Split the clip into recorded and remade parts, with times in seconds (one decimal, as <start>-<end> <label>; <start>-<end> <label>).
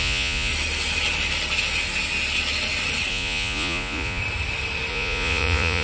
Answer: 0.0-0.5 remade; 0.5-3.1 recorded; 3.1-4.2 remade; 4.2-4.9 recorded; 4.9-5.8 remade